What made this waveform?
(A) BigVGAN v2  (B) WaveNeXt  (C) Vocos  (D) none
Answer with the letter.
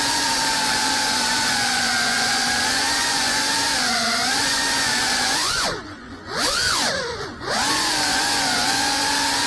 C